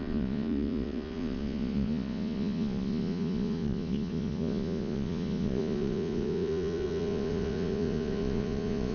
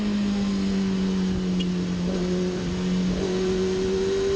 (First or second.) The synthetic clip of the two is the first